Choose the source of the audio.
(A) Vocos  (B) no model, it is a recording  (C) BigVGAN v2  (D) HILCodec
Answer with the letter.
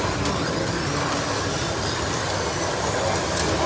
B